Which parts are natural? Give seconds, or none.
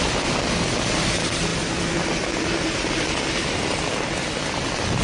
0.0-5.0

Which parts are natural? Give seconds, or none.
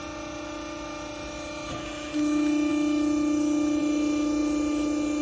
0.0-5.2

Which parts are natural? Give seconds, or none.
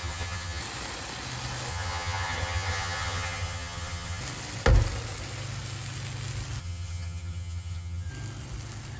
0.6-1.7; 4.2-6.6; 8.1-9.0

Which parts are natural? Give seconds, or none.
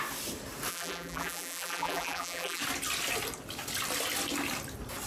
0.0-0.7; 2.6-5.1